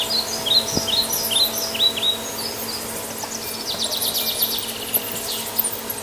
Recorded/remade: recorded